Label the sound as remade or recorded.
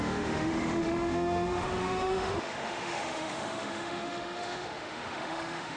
remade